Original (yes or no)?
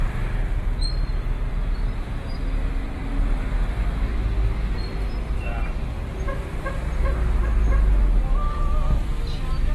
yes